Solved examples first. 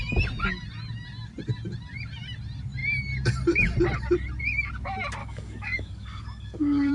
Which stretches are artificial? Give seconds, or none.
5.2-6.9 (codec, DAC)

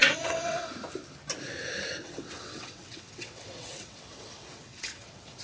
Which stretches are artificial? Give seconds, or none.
0.0-0.7 (vocoder, WaveNeXt); 2.0-5.4

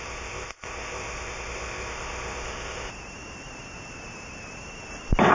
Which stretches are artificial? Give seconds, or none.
0.0-2.9 (codec, ZipCodec)

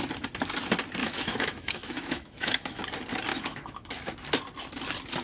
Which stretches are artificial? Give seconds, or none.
1.0-2.8 (autoencoder, DAC-VAE); 3.3-3.9

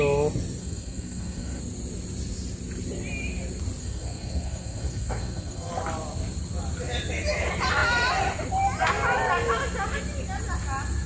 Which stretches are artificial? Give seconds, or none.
0.6-1.6 (codec, SNAC); 3.8-5.7

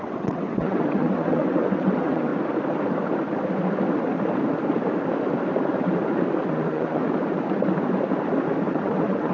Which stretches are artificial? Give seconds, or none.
0.0-2.3 (vocoder, WaveNeXt); 6.5-7.0; 8.7-9.3

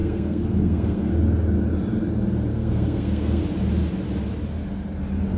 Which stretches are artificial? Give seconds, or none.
0.0-1.1 (codec, SNAC); 2.5-3.4